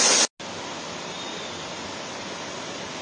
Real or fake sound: real